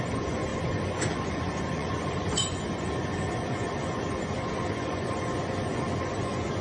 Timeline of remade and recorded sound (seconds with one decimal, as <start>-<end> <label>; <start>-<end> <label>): 0.0-6.6 remade